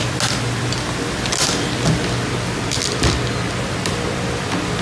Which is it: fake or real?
real